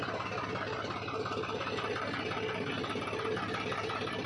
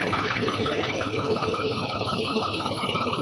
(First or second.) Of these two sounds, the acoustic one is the first